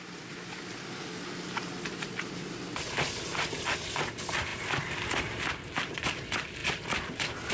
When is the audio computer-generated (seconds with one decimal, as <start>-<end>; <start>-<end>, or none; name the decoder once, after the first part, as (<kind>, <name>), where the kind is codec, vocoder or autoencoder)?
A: none